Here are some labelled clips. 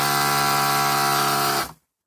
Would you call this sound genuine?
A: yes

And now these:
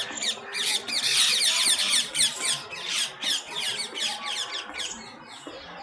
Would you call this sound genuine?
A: no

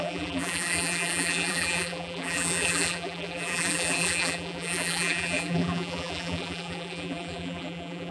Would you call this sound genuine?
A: no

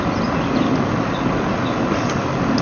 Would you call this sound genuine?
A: yes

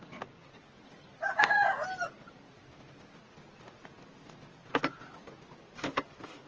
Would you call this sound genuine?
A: yes